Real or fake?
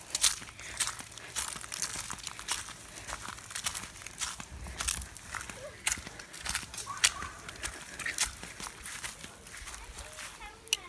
real